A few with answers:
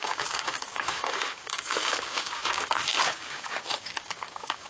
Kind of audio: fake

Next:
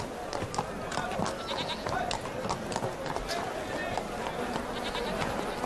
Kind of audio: real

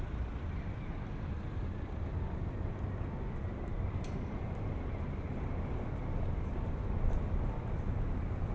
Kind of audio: real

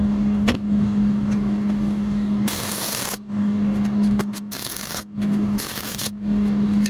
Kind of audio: fake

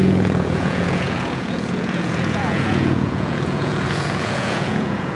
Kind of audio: fake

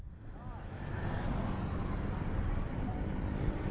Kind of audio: real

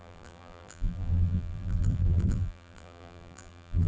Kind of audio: fake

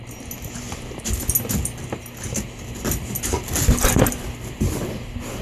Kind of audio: real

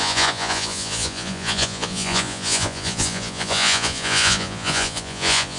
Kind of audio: fake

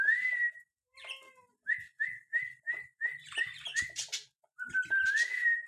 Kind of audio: fake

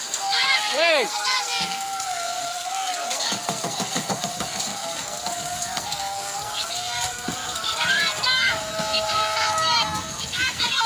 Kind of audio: fake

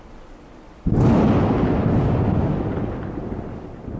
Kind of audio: real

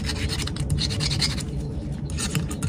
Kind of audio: real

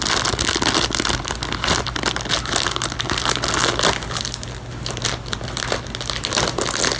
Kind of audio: real